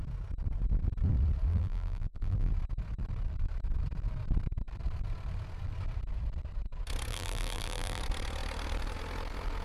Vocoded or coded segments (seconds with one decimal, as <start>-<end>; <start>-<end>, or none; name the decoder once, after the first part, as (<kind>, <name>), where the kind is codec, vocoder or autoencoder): 1.5-2.5 (vocoder, BigVGAN v2); 7.1-8.0